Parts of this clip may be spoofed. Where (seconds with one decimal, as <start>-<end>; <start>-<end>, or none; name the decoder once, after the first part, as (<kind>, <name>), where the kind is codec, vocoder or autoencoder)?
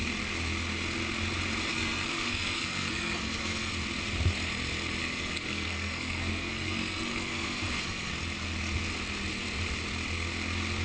1.7-3.7 (codec, SNAC); 5.0-8.1